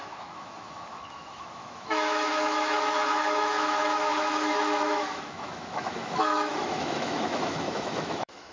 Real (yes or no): no